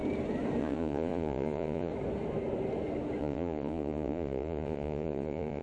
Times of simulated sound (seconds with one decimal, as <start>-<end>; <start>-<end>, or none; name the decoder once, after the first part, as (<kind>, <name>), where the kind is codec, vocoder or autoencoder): 0.6-1.9 (vocoder, Vocos); 3.2-5.6